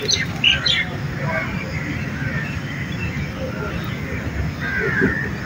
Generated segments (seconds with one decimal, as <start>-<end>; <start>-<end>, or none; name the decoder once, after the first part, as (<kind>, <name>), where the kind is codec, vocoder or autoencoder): none